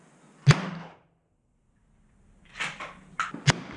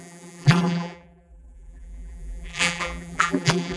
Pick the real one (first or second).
first